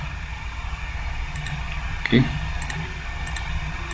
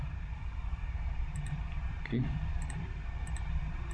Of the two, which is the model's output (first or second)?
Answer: second